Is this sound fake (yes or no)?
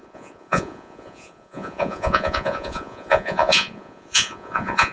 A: yes